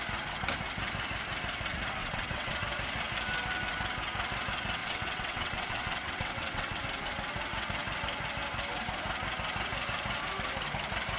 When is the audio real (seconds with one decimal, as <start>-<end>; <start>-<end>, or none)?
0.0-2.0; 2.5-4.8; 6.8-11.2